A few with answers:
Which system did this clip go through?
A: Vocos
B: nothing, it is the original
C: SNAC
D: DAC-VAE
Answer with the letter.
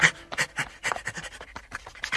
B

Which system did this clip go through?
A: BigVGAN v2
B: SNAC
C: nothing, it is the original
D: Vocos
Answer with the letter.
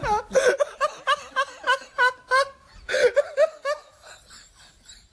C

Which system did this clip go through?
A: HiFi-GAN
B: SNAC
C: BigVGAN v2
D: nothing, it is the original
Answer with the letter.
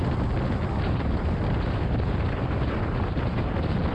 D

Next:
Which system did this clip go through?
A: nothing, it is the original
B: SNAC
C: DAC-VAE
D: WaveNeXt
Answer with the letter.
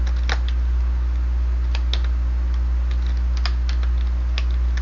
A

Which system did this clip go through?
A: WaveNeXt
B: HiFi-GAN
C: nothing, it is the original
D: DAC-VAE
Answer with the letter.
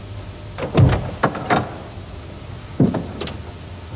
C